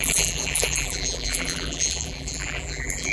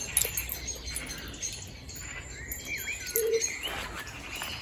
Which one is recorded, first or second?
second